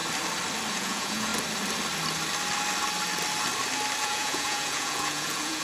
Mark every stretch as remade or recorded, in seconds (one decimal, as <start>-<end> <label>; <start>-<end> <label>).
0.0-0.7 recorded; 0.7-1.3 remade; 1.3-4.0 recorded; 4.0-5.6 remade